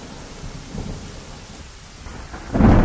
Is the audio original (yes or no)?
yes